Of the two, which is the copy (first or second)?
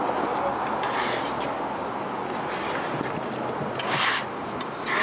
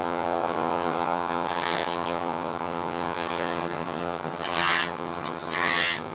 second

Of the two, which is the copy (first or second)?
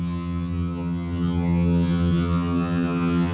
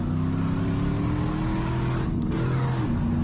first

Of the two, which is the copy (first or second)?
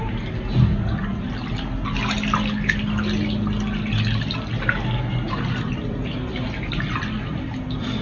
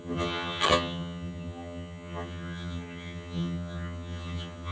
second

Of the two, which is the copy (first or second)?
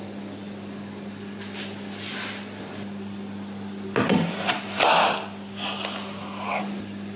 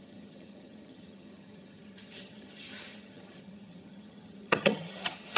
second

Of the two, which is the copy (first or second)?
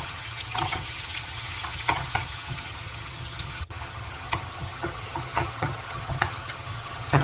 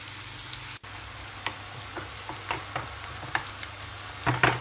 first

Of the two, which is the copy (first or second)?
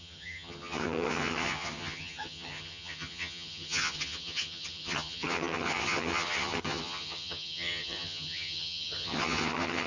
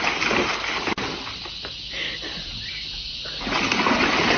first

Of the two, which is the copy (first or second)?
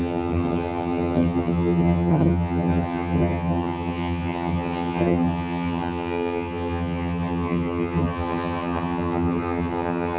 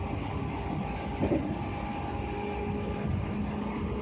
first